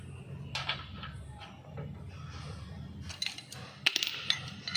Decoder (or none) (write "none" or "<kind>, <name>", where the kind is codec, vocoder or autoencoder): none